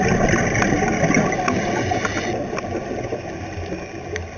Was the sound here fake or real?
real